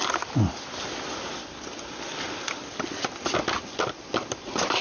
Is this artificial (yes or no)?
no